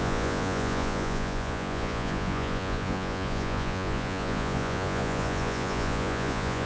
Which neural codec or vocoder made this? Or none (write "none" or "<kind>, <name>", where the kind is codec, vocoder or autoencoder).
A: vocoder, Vocos